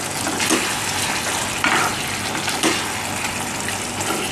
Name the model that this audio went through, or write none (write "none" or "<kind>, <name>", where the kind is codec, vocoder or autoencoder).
none